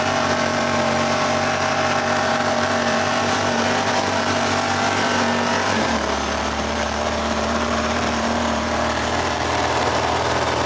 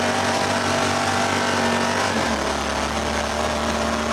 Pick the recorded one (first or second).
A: second